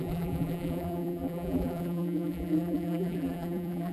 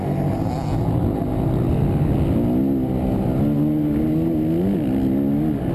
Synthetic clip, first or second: first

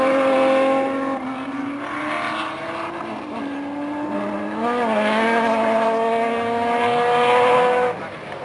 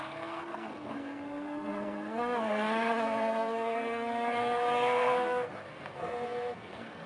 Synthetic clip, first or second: second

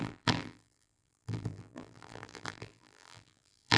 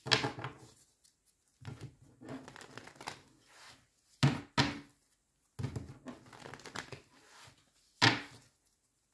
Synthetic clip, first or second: first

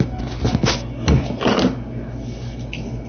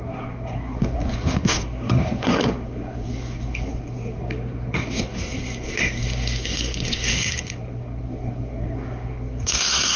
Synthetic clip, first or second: second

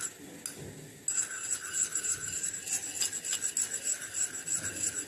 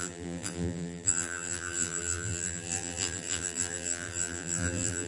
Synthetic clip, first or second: second